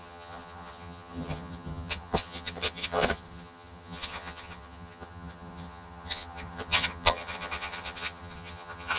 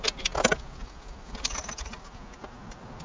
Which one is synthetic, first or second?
first